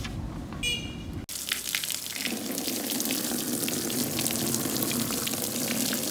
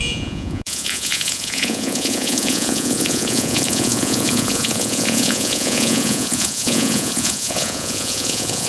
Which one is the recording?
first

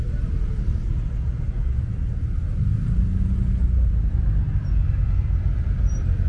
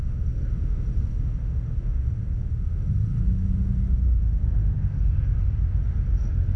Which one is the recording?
first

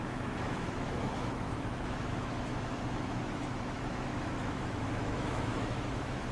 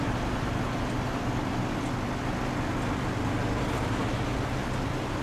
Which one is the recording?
second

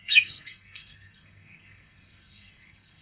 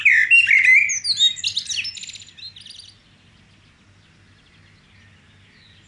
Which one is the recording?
second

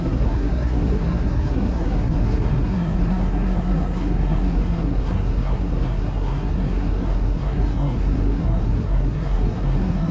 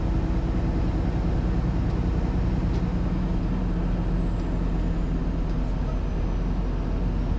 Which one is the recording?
second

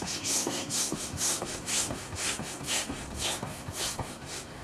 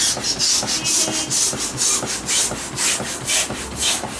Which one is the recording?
second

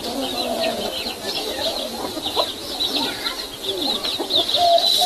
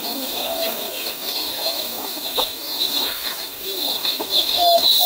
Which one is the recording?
first